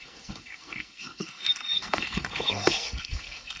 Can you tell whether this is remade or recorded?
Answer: remade